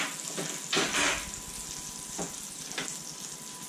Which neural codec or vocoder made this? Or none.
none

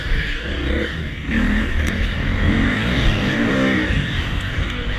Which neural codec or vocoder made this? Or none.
codec, DAC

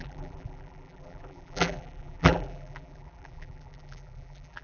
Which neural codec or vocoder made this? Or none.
vocoder, BigVGAN v2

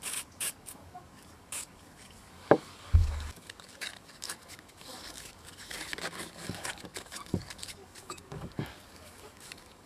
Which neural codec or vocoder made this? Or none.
codec, DAC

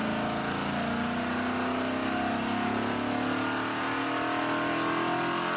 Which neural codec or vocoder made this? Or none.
none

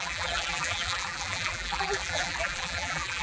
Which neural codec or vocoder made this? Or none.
vocoder, BigVGAN v2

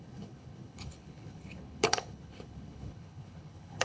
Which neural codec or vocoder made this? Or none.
codec, HILCodec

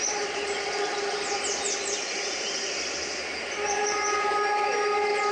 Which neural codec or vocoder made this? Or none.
none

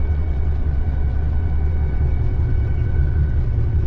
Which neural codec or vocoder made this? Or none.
vocoder, WaveNeXt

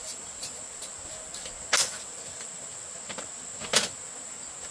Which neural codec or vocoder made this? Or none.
none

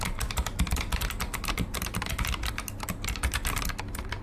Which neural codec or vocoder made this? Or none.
none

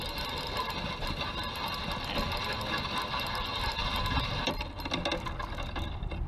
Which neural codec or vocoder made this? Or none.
none